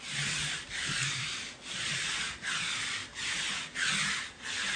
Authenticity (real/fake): real